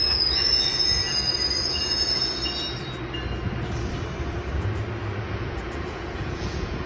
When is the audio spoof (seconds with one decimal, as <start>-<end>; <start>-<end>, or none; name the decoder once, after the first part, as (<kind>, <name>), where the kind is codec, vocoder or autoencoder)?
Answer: 0.0-2.4 (vocoder, Vocos); 5.2-6.9